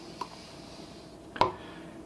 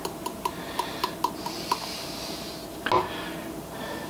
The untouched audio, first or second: second